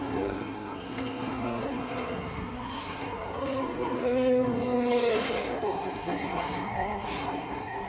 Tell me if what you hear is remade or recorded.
remade